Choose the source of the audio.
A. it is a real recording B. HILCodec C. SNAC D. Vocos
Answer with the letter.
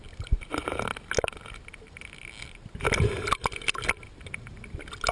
A